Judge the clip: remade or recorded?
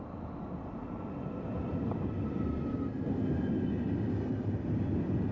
recorded